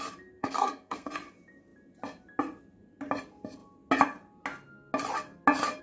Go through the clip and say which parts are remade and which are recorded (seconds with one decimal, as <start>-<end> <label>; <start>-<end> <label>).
0.0-0.4 recorded; 0.4-1.1 remade; 1.1-5.8 recorded